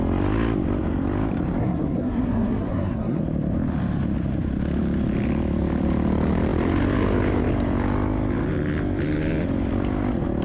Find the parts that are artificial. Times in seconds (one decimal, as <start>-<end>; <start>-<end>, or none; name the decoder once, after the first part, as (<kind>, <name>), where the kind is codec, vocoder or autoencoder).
1.6-3.2 (codec, SNAC)